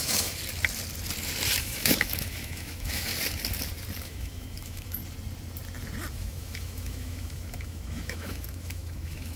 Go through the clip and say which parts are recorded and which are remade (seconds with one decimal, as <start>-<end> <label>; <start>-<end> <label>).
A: 0.0-0.4 remade; 0.4-1.6 recorded; 1.6-3.1 remade; 3.1-4.0 recorded; 4.0-5.0 remade; 5.0-6.1 recorded; 6.1-9.4 remade